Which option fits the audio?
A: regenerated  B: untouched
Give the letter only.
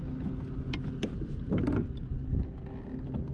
B